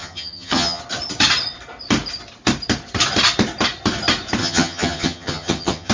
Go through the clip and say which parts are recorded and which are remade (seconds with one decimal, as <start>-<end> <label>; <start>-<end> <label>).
0.0-0.8 remade; 0.8-4.4 recorded; 4.4-5.9 remade